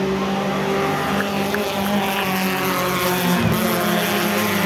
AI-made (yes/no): no